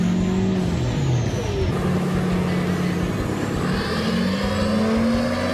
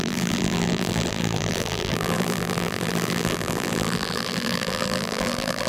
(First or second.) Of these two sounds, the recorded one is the first